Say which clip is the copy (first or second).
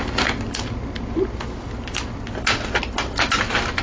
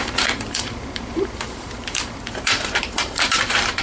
second